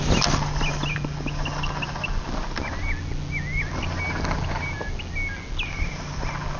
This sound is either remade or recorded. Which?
recorded